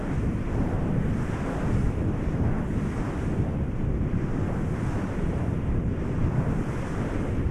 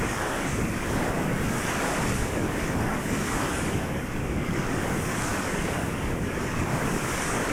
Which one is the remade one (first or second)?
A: second